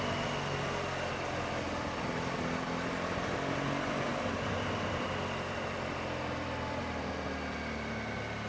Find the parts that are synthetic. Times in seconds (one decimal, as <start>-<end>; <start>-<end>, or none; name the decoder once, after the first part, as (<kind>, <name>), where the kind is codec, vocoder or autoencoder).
4.1-6.8 (vocoder, BigVGAN v2)